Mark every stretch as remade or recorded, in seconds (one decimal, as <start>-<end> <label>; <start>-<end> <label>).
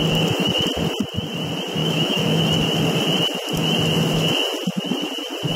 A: 0.0-1.8 recorded; 1.8-2.4 remade; 2.4-5.6 recorded